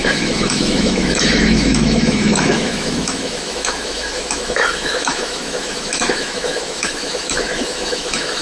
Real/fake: fake